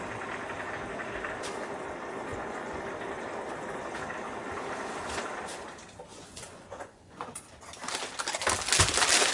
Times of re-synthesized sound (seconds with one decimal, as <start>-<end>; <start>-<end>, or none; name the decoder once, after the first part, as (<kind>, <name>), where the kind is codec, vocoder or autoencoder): 2.3-2.8 (vocoder, Vocos); 6.1-7.4